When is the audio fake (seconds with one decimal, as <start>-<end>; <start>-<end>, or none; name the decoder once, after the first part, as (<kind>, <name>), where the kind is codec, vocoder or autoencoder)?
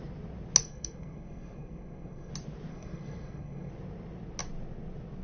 0.6-2.3 (codec, SNAC); 2.7-3.7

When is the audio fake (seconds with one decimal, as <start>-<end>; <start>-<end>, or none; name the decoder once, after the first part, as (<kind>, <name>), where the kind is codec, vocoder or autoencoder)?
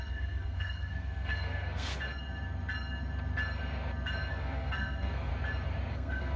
0.0-1.9 (codec, SNAC); 4.3-5.3; 5.9-6.4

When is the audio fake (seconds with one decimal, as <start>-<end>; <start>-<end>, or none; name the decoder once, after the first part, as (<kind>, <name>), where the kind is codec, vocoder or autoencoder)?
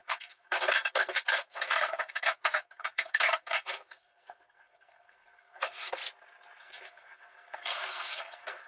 0.0-6.0 (codec, SNAC); 6.6-8.7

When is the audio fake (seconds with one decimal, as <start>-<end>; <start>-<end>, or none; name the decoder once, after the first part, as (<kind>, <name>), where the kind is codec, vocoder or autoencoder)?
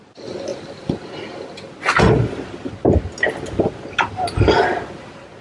none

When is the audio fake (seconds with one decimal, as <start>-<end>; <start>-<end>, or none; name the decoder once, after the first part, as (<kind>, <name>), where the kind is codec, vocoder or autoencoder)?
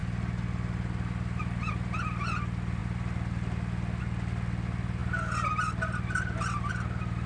none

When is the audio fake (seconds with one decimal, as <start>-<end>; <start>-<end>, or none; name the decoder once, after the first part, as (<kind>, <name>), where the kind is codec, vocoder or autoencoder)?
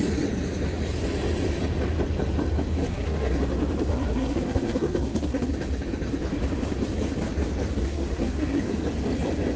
2.8-3.4 (codec, SNAC); 3.9-5.5; 7.8-8.6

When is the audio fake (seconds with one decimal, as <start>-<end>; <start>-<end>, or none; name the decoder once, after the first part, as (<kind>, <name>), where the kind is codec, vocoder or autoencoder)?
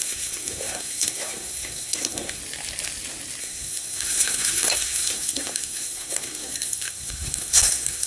0.0-2.4 (codec, SNAC); 3.4-8.1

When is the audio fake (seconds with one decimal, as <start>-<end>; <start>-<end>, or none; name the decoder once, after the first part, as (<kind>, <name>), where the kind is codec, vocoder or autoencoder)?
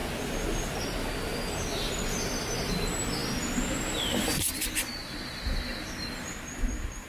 none